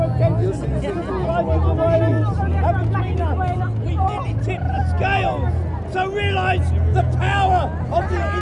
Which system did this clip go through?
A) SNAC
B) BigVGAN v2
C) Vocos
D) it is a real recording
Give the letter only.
D